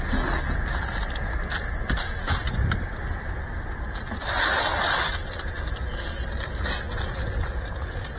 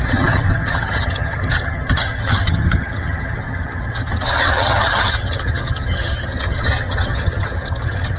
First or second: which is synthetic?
second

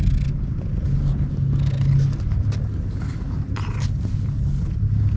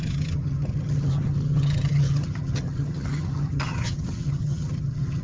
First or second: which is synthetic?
second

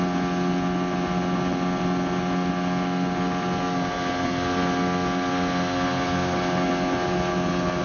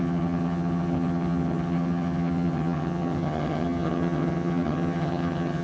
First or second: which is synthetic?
second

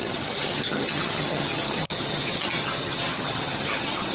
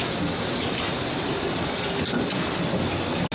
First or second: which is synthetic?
first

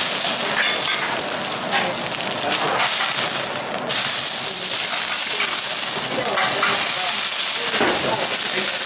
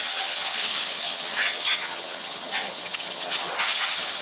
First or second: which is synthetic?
second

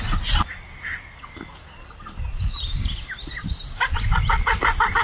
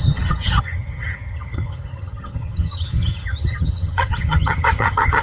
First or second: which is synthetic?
second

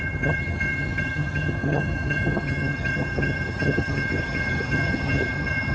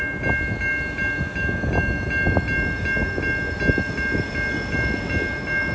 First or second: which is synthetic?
first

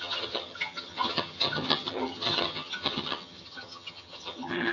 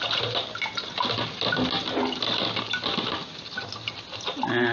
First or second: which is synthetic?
first